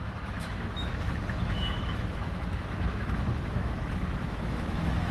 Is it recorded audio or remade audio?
remade